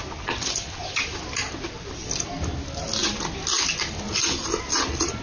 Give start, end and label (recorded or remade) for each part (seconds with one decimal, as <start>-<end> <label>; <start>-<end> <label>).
0.0-5.2 recorded